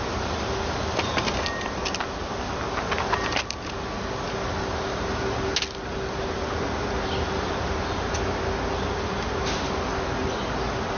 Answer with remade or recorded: recorded